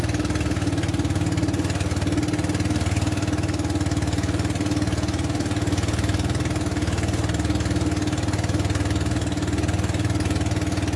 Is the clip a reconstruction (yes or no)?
no